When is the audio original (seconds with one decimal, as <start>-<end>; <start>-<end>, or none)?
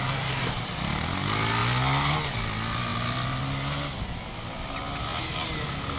0.0-6.0